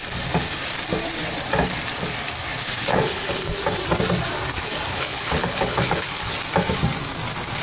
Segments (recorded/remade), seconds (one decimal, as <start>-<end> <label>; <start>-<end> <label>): 0.0-2.9 recorded; 2.9-3.6 remade; 3.6-4.9 recorded; 4.9-6.4 remade; 6.4-7.6 recorded